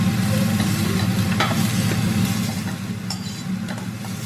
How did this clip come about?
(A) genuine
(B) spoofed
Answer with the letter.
A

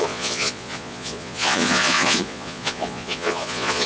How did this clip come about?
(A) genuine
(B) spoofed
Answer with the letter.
B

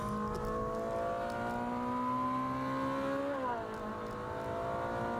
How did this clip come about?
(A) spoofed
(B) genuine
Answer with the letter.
B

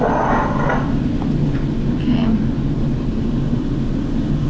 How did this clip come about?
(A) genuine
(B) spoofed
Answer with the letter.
A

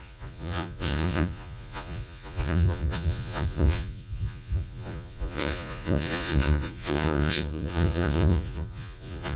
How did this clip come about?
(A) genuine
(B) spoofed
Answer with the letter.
B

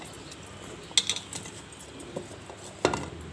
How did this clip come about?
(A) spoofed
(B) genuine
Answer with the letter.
B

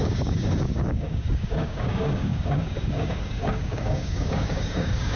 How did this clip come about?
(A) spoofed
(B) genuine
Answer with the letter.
A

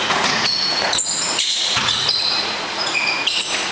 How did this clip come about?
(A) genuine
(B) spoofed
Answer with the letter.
B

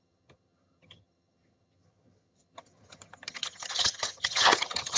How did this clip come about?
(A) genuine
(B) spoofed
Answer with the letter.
B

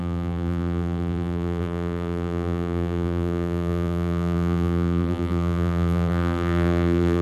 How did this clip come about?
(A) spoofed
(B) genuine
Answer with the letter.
A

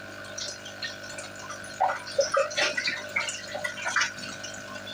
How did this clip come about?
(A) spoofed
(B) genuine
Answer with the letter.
B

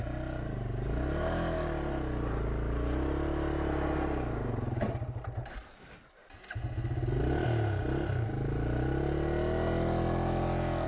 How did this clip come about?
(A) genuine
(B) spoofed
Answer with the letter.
A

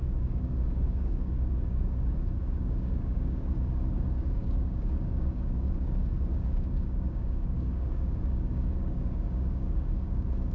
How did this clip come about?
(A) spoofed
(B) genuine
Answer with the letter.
A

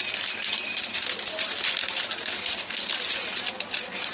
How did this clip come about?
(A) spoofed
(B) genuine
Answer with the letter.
B